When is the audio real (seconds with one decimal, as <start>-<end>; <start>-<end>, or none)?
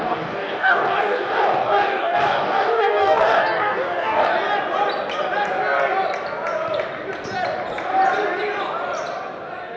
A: 4.3-9.8